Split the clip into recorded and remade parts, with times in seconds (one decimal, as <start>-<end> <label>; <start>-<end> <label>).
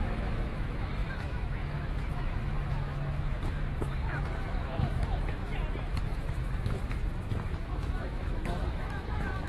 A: 0.0-5.4 remade; 5.4-6.0 recorded; 6.0-9.5 remade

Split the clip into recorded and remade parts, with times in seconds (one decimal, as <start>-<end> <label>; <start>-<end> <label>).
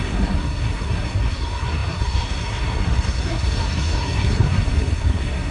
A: 0.0-5.5 remade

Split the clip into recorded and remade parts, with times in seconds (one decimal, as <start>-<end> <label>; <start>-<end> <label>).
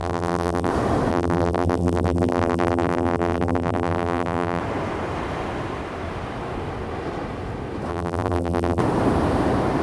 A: 0.0-0.7 remade; 0.7-1.1 recorded; 1.1-4.6 remade; 4.6-7.9 recorded; 7.9-8.8 remade; 8.8-9.8 recorded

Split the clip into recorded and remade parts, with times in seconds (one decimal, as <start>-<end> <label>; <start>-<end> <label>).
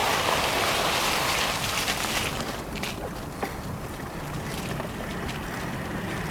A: 0.0-6.3 recorded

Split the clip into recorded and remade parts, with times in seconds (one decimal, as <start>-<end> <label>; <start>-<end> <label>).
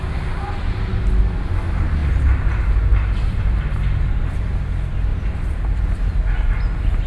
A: 0.0-0.9 remade; 0.9-2.0 recorded; 2.0-4.6 remade; 4.6-5.1 recorded; 5.1-6.3 remade; 6.3-7.1 recorded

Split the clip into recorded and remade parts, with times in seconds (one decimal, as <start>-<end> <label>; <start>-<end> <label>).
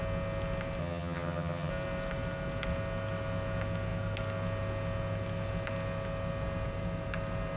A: 0.0-0.8 recorded; 0.8-1.7 remade; 1.7-7.6 recorded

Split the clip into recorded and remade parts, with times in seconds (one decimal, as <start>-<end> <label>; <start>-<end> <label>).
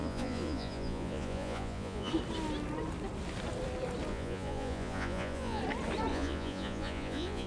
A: 0.0-2.1 remade; 2.1-4.1 recorded; 4.1-5.6 remade; 5.6-6.1 recorded; 6.1-7.5 remade